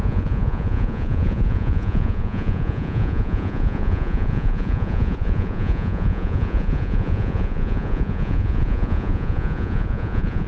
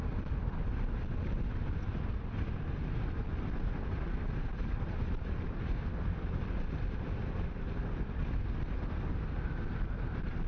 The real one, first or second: second